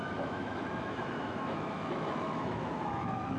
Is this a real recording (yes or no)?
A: no